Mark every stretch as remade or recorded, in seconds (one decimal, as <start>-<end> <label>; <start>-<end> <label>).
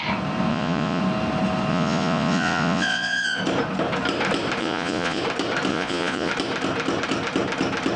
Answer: 0.0-0.5 recorded; 0.5-1.0 remade; 1.0-1.7 recorded; 1.7-3.4 remade; 3.4-4.6 recorded; 4.6-5.2 remade; 5.2-5.7 recorded; 5.7-6.3 remade; 6.3-8.0 recorded